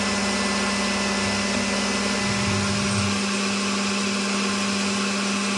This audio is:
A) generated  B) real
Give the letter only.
B